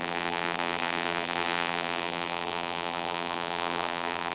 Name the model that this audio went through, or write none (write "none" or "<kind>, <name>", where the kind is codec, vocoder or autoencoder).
vocoder, BigVGAN v2